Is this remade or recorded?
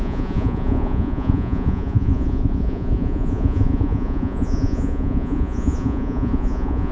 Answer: remade